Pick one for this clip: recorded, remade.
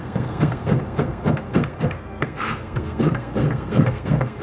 remade